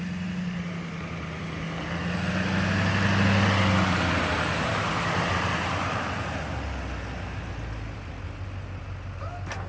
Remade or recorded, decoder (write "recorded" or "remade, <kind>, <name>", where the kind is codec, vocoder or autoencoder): recorded